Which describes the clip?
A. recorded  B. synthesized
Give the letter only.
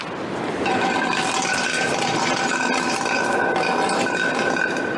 A